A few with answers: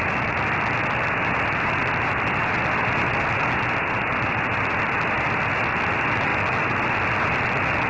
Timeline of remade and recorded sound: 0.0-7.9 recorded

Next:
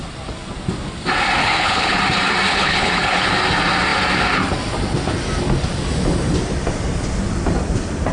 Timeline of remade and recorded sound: 0.0-1.4 recorded; 1.4-2.0 remade; 2.0-2.5 recorded; 2.5-3.3 remade; 3.3-8.1 recorded

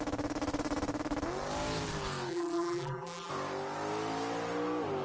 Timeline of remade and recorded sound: 0.0-2.3 recorded; 2.3-3.3 remade; 3.3-5.0 recorded

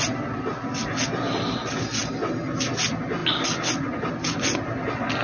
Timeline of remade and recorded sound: 0.0-5.2 recorded

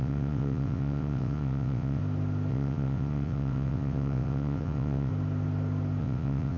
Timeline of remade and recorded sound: 0.0-2.0 remade; 2.0-2.5 recorded; 2.5-5.1 remade; 5.1-6.0 recorded; 6.0-6.6 remade

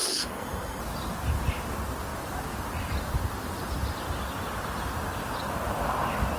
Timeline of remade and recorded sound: 0.0-0.8 remade; 0.8-6.4 recorded

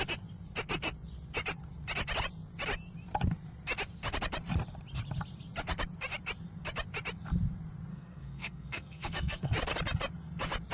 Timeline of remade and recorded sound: 0.0-7.9 recorded; 7.9-9.5 remade; 9.5-10.7 recorded